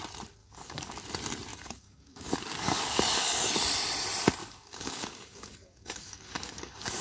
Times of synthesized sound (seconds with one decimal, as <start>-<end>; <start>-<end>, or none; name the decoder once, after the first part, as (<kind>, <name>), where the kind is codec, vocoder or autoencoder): 0.4-1.0 (codec, DAC); 1.5-3.4; 4.4-7.0